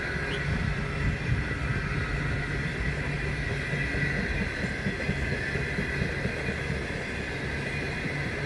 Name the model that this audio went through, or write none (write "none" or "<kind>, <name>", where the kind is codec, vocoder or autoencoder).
none